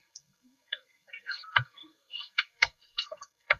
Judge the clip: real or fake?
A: fake